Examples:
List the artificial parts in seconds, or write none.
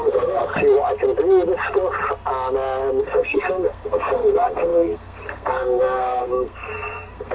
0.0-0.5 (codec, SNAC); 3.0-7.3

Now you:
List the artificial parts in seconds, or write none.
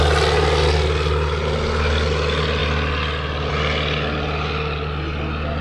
none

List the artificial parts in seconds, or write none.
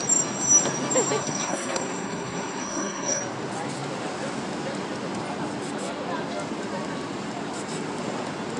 1.2-3.2 (codec, SNAC)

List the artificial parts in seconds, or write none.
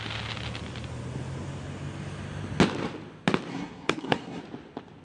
3.5-4.4 (codec, SNAC)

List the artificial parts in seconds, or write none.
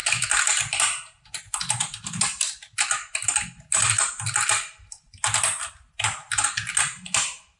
none